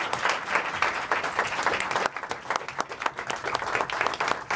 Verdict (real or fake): real